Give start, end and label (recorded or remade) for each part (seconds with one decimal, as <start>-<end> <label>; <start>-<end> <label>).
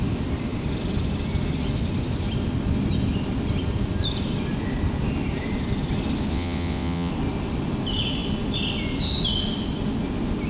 0.0-6.3 recorded; 6.3-7.1 remade; 7.1-10.5 recorded